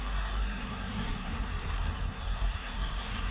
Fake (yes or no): yes